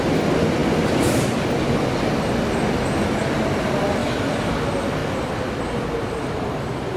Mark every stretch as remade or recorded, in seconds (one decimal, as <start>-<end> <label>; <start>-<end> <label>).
0.0-4.0 recorded; 4.0-4.5 remade; 4.5-5.0 recorded; 5.0-5.6 remade; 5.6-7.0 recorded